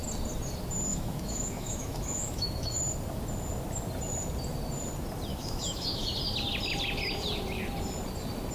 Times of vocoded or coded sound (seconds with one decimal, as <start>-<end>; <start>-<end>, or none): 0.9-2.8; 5.3-6.1